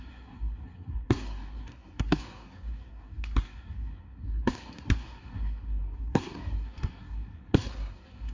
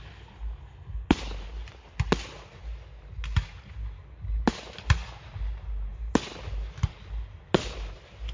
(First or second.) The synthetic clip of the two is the first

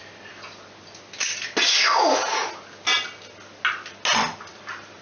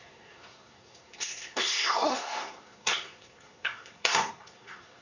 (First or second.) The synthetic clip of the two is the second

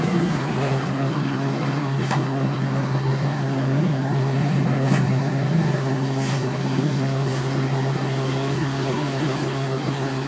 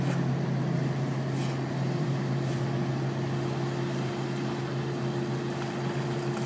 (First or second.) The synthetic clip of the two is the first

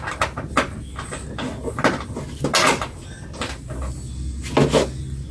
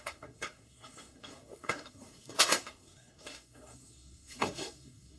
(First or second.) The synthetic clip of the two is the second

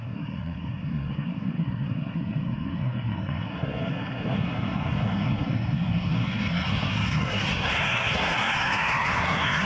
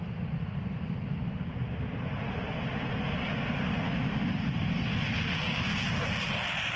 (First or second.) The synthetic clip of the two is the first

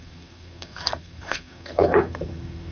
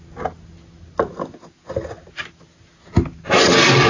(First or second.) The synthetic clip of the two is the first